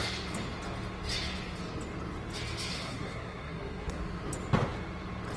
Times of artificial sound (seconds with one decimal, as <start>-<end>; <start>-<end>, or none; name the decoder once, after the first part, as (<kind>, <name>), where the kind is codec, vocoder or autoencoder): 2.7-4.0 (codec, SNAC)